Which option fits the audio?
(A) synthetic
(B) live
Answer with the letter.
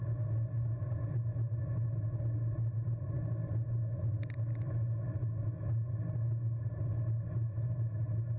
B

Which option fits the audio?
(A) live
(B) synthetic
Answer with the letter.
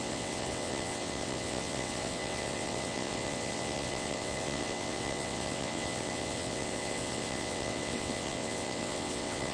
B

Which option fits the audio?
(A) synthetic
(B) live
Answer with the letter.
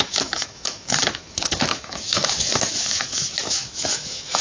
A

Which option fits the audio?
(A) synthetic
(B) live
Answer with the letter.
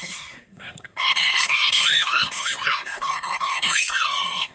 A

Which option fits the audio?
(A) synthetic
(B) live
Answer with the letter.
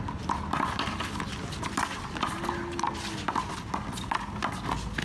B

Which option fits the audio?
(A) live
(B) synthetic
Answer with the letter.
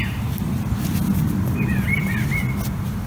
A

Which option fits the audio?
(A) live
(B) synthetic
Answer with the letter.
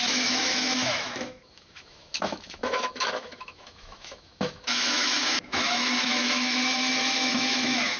B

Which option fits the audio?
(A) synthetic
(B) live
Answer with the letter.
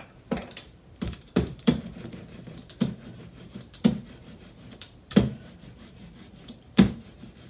A